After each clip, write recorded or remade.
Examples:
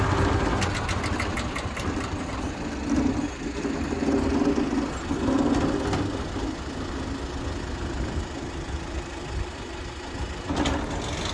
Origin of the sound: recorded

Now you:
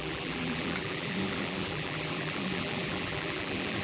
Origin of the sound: remade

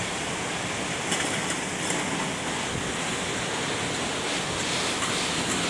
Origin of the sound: recorded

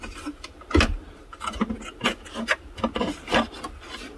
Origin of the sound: recorded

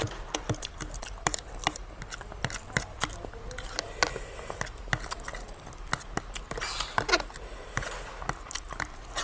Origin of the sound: recorded